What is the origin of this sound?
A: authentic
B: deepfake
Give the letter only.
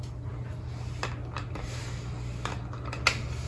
A